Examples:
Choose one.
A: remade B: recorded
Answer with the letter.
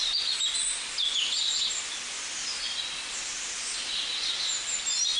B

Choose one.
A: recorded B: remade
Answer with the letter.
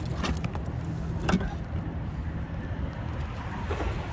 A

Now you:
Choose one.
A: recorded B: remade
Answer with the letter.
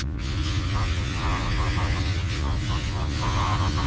B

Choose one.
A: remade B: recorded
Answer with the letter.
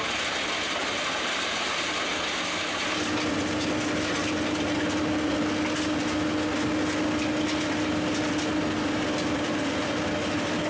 B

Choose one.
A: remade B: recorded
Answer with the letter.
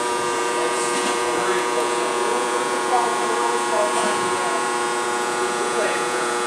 A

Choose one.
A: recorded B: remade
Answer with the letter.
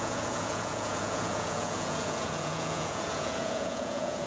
B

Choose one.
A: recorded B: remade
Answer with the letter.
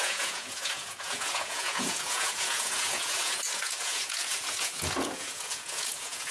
B